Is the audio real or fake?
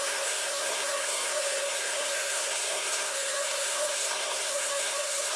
fake